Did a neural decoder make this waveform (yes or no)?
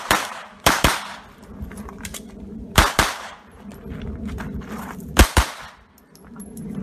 no